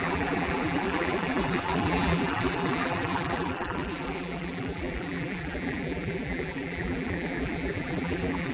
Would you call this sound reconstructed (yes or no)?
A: yes